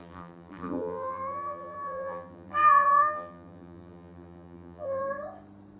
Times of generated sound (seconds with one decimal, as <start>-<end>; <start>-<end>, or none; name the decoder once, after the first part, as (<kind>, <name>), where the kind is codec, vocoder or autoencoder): 0.0-5.0 (vocoder, BigVGAN v2)